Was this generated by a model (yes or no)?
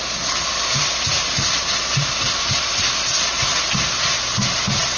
no